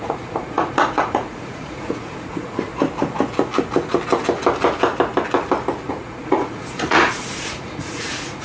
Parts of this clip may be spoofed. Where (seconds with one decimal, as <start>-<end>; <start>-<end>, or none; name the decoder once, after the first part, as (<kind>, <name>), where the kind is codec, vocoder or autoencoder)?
0.0-2.7 (vocoder, Vocos); 5.9-8.4